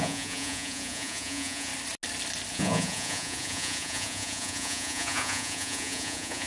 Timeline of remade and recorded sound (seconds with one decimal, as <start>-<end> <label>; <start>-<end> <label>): 0.0-1.7 remade; 1.7-2.5 recorded; 2.5-6.5 remade